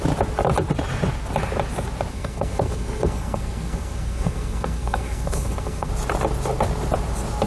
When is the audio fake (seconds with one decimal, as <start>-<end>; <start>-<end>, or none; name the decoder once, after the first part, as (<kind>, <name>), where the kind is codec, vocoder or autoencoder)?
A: 2.1-5.9 (codec, SNAC)